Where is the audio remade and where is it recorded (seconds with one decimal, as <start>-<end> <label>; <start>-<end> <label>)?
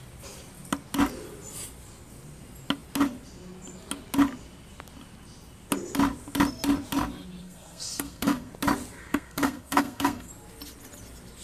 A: 0.0-7.4 recorded; 7.4-8.5 remade; 8.5-9.0 recorded; 9.0-10.3 remade; 10.3-11.4 recorded